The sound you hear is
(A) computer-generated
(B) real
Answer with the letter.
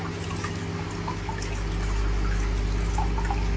B